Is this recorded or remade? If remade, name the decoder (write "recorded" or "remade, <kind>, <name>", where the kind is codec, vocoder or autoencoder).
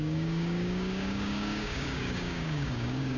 remade, codec, DAC